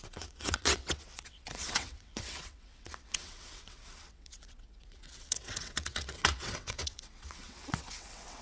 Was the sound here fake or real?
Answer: fake